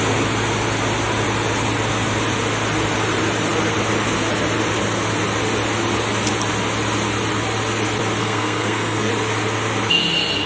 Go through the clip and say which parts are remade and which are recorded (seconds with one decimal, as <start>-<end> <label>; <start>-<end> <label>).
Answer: 0.0-8.2 recorded; 8.2-9.1 remade; 9.1-10.5 recorded